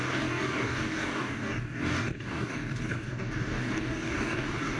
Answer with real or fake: fake